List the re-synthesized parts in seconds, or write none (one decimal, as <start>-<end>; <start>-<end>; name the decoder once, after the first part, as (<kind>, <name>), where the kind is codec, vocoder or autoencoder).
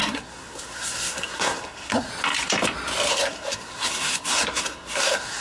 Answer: 0.0-2.1 (codec, SNAC); 3.1-5.4